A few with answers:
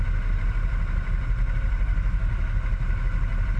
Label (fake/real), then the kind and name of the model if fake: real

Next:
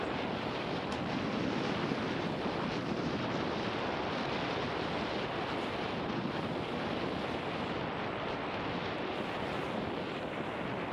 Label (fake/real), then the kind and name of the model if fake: real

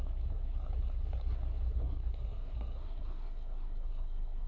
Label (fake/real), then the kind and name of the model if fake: fake, codec, SNAC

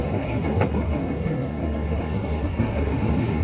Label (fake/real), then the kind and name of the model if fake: fake, codec, SNAC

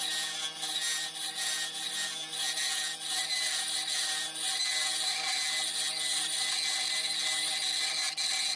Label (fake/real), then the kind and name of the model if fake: real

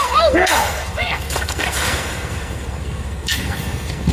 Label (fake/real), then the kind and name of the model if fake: fake, codec, SNAC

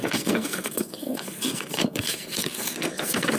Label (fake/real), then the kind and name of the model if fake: fake, codec, SNAC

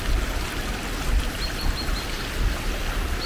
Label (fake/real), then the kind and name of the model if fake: real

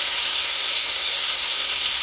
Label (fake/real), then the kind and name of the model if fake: fake, codec, SNAC